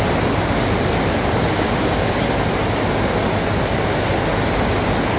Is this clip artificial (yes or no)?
no